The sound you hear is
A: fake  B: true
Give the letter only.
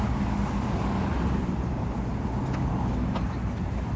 B